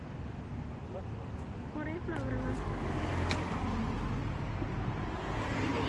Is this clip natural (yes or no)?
yes